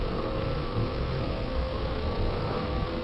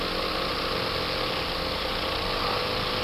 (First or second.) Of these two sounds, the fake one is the first